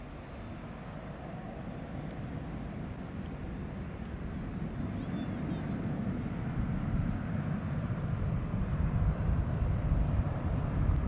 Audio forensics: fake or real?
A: real